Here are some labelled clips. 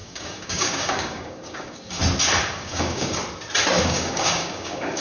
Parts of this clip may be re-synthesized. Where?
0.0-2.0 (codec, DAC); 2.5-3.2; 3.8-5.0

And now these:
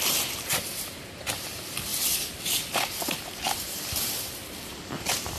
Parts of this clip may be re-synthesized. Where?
1.9-4.8 (vocoder, BigVGAN v2)